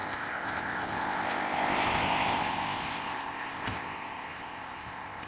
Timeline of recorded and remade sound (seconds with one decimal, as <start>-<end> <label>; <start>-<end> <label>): 0.0-5.3 remade